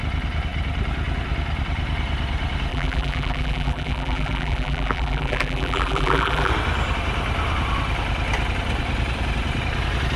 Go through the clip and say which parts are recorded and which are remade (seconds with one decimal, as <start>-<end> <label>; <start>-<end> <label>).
0.0-2.7 recorded; 2.7-6.5 remade; 6.5-10.2 recorded